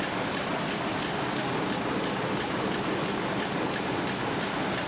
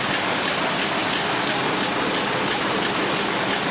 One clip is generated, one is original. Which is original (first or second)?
second